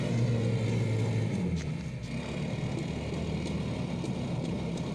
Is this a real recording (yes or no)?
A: yes